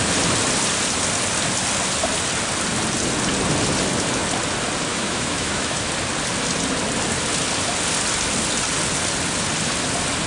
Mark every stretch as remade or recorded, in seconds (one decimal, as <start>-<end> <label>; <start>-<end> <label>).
0.0-4.9 recorded; 4.9-5.9 remade; 5.9-10.3 recorded